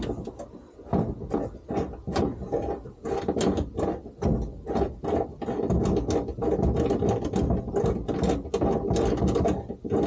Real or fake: real